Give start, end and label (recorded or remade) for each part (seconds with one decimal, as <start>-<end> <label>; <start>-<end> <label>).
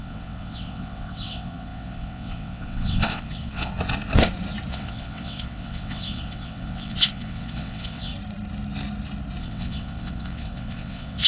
0.0-3.7 remade; 3.7-4.7 recorded; 4.7-8.1 remade; 8.1-9.4 recorded; 9.4-11.3 remade